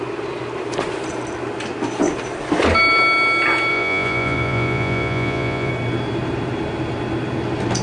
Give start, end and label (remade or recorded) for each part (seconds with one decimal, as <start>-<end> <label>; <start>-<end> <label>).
0.0-3.7 recorded; 3.7-5.7 remade; 5.7-7.8 recorded